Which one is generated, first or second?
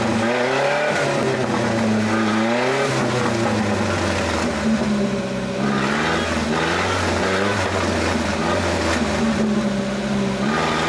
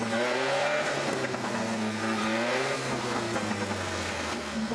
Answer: second